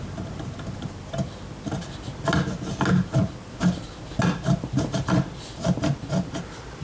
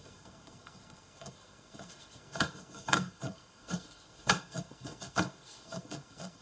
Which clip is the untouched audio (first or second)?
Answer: first